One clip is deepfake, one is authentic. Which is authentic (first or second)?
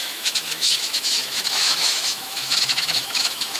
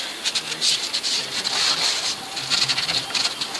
second